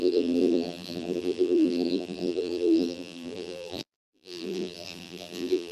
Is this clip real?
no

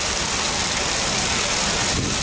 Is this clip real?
yes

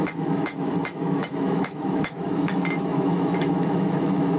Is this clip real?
no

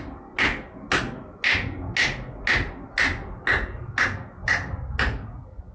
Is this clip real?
yes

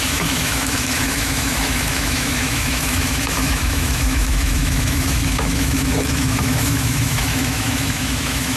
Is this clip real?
no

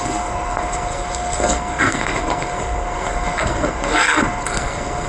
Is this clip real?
no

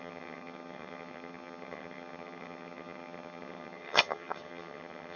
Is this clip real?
no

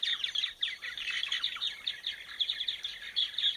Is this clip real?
yes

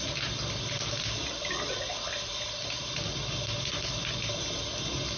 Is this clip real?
yes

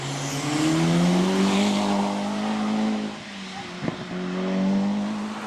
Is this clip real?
yes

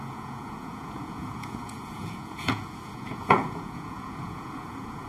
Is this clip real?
no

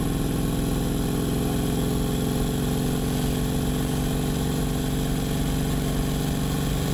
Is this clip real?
yes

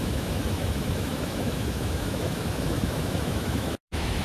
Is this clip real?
no